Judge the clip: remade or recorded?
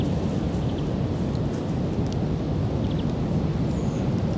recorded